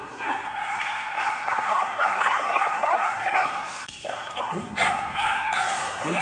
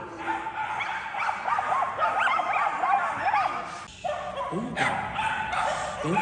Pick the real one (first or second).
second